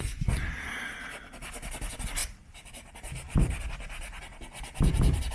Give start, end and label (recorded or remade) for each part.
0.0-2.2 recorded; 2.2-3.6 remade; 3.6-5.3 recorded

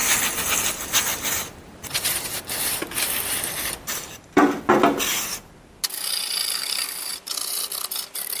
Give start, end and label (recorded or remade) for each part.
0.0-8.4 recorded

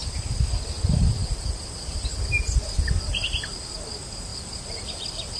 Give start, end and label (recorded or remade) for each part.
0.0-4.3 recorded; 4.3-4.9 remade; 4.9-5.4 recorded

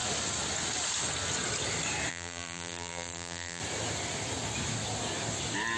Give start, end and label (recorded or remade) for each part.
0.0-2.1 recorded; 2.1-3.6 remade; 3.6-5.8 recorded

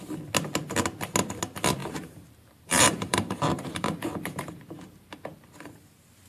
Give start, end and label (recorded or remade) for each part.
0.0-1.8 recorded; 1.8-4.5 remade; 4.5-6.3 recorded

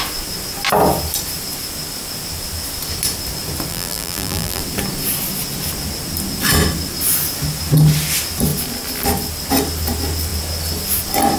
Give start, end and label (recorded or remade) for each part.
0.0-3.7 recorded; 3.7-4.6 remade; 4.6-11.4 recorded